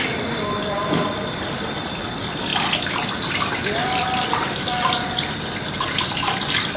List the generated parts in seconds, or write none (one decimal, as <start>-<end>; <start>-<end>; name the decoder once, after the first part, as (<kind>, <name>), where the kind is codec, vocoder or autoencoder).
none